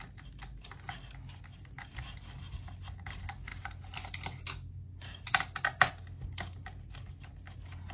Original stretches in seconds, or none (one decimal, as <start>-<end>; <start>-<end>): 0.0-7.9